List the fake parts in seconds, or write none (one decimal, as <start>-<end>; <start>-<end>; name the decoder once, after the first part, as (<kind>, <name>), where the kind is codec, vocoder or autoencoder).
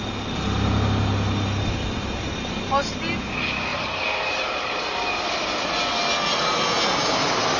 3.7-4.6 (vocoder, BigVGAN v2)